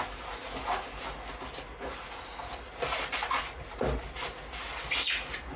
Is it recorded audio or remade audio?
recorded